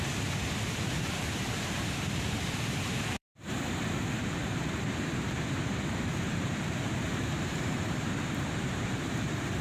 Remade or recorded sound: remade